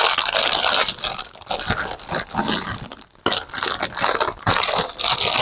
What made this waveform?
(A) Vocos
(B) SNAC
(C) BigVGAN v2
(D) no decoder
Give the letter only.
D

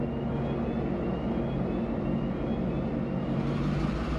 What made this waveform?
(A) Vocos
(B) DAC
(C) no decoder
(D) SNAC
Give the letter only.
C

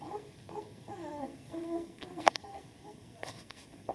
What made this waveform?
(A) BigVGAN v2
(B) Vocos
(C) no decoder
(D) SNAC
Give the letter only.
D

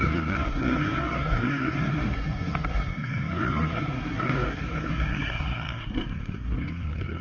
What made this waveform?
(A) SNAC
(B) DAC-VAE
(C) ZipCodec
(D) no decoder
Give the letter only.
A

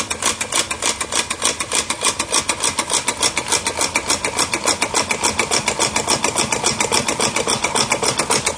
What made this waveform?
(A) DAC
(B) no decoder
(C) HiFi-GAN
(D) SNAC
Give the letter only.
B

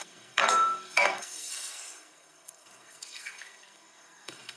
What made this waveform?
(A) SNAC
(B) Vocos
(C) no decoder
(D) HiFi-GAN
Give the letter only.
A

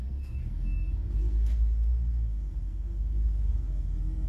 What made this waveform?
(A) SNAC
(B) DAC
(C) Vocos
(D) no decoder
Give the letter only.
A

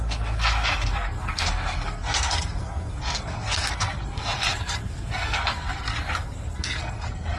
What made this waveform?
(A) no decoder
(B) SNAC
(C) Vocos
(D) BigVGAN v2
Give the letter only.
B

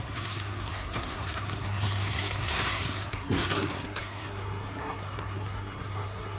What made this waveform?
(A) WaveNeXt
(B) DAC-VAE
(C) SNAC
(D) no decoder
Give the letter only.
C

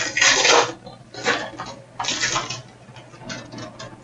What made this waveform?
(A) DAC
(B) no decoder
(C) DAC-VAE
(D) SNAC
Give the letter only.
B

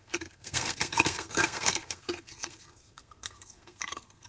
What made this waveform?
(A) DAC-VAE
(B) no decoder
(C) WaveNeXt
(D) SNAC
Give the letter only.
D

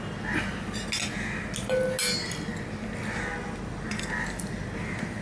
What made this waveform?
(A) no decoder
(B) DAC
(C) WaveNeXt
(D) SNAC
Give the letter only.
A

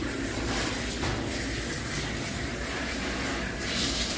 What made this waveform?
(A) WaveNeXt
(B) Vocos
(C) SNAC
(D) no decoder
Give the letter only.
D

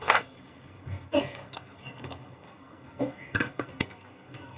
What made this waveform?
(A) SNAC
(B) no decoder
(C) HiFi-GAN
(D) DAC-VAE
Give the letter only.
A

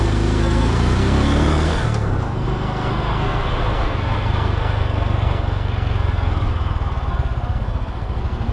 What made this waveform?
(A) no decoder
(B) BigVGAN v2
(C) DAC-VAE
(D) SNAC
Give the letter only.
D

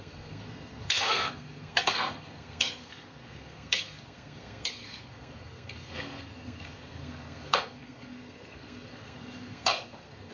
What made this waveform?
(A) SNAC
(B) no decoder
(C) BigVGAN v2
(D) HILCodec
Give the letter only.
A